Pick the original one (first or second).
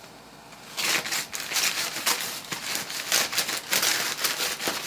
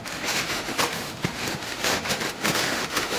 first